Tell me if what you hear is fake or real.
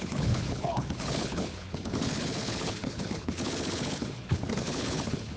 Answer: fake